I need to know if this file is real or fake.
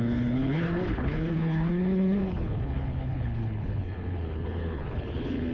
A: fake